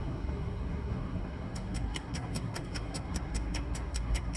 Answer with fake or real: fake